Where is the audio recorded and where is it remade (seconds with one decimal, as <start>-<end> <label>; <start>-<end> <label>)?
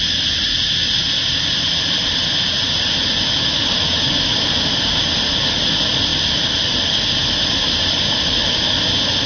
0.0-9.3 recorded